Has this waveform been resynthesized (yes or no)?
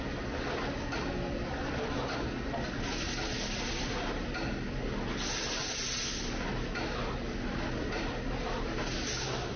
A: no